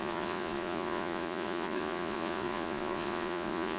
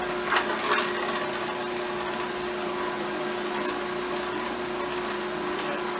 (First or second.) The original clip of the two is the second